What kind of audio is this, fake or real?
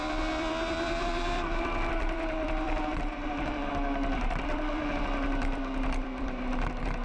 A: fake